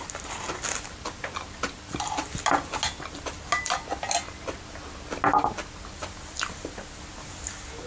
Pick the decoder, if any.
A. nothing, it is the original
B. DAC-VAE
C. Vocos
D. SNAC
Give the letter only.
A